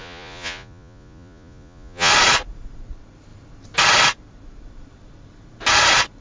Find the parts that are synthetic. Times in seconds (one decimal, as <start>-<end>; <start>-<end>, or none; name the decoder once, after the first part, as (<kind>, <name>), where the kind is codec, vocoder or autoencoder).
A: 0.0-2.1 (vocoder, Vocos)